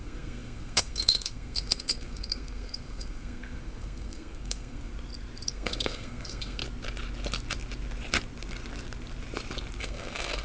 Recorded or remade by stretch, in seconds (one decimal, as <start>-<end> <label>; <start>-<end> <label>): 0.0-4.9 remade; 4.9-5.5 recorded; 5.5-6.6 remade; 6.6-9.8 recorded; 9.8-10.4 remade